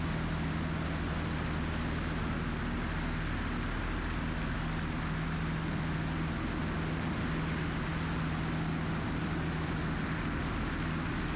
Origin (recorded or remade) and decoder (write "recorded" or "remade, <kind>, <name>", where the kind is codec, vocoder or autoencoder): recorded